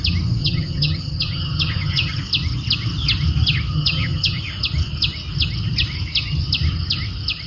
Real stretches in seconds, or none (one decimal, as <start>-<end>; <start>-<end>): 0.0-0.4; 2.2-3.7; 4.4-7.5